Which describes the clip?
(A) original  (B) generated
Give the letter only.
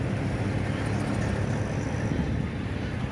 A